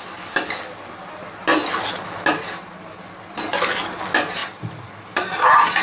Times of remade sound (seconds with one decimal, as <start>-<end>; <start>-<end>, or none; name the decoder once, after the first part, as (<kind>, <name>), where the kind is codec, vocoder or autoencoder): 4.4-5.3 (vocoder, BigVGAN v2)